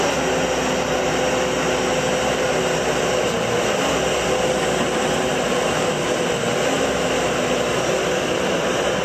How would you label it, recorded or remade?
recorded